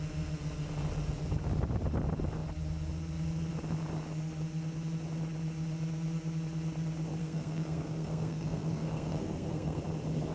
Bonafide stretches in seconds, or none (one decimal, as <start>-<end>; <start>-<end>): 0.0-7.2; 9.8-10.3